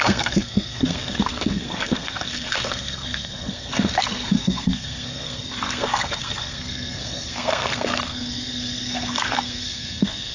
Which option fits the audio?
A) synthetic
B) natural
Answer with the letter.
A